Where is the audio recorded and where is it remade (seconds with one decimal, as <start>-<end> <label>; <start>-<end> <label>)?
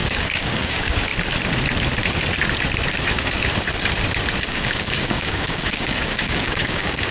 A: 0.0-1.1 remade; 1.1-4.5 recorded; 4.5-7.1 remade